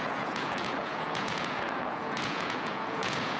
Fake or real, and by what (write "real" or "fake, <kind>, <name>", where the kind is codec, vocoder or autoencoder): fake, vocoder, Vocos